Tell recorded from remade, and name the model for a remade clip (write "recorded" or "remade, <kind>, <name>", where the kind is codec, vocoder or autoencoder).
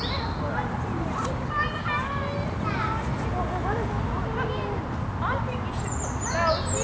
recorded